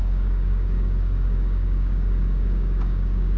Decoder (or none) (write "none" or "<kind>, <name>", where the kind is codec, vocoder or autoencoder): codec, DAC